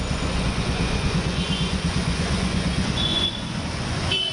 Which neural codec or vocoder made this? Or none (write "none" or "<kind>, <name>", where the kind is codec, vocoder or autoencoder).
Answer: vocoder, Vocos